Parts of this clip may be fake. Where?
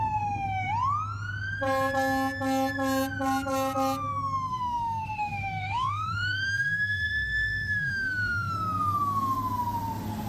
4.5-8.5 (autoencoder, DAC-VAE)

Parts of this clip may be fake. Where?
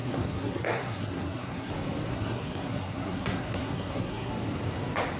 0.0-1.7 (codec, SNAC); 2.1-4.3